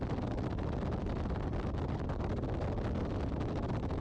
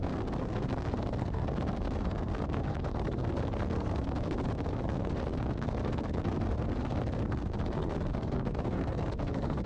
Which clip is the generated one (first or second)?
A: second